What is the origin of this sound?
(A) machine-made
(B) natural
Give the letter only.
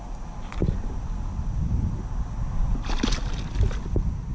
B